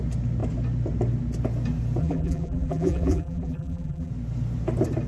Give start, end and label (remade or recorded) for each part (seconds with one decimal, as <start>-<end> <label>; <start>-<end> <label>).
0.0-2.0 recorded; 2.0-4.1 remade; 4.1-5.1 recorded

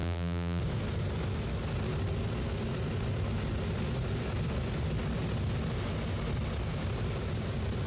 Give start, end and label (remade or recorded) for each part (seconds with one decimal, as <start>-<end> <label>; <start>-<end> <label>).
0.0-0.6 remade; 0.6-7.9 recorded

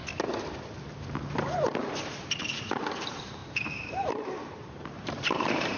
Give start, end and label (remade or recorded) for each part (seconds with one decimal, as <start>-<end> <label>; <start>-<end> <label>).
0.0-2.4 recorded; 2.4-5.8 remade

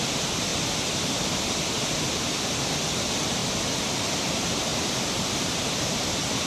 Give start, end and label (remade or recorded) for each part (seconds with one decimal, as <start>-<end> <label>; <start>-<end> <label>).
0.0-0.5 remade; 0.5-1.9 recorded; 1.9-3.4 remade; 3.4-4.1 recorded; 4.1-6.5 remade

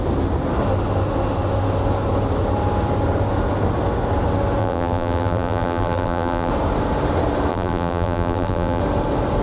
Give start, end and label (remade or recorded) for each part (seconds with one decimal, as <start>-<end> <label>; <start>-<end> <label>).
0.0-4.6 recorded; 4.6-6.5 remade; 6.5-7.5 recorded; 7.5-8.8 remade; 8.8-9.4 recorded

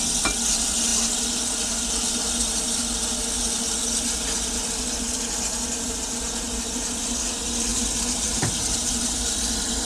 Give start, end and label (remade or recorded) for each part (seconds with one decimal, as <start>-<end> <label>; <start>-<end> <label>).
0.0-7.7 recorded; 7.7-9.2 remade; 9.2-9.8 recorded

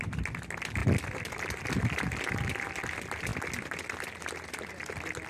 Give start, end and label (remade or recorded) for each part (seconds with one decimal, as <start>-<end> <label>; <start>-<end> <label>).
0.0-5.3 recorded

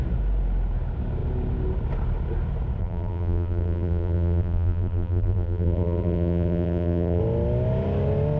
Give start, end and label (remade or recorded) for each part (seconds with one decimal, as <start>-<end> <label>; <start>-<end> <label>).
0.0-2.8 recorded; 2.8-7.2 remade; 7.2-8.4 recorded